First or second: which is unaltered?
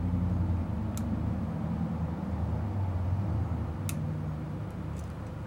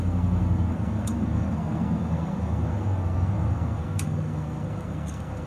first